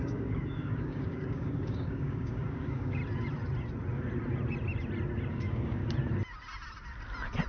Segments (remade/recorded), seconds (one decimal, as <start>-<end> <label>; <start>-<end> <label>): 0.0-3.0 remade; 3.0-5.3 recorded; 5.3-5.8 remade; 5.8-7.5 recorded